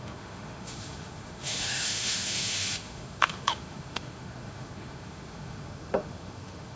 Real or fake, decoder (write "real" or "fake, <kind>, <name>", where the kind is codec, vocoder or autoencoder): fake, autoencoder, DAC-VAE